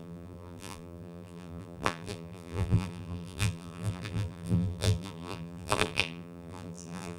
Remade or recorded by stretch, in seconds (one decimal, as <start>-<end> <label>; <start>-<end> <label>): 0.0-7.2 remade

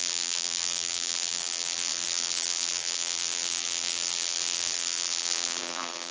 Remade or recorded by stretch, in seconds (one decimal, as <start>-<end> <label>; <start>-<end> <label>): 0.0-6.1 remade

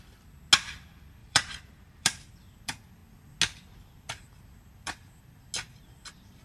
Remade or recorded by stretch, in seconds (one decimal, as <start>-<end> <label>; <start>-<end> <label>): 0.0-1.2 recorded; 1.2-2.3 remade; 2.3-6.4 recorded

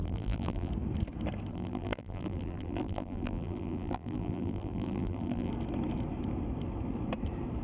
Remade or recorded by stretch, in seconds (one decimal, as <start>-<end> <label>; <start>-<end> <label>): 0.0-0.7 remade; 0.7-1.5 recorded; 1.5-5.5 remade; 5.5-7.6 recorded

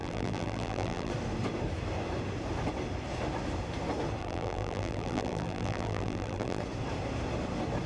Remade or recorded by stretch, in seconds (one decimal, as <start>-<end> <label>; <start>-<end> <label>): 0.0-1.1 remade; 1.1-4.2 recorded; 4.2-6.6 remade; 6.6-7.9 recorded

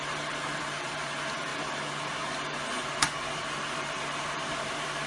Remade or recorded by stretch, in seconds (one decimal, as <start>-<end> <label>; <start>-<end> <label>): 0.0-1.5 remade; 1.5-4.6 recorded; 4.6-5.1 remade

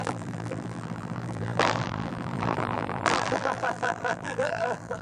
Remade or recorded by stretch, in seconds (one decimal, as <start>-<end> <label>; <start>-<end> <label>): 0.0-5.0 remade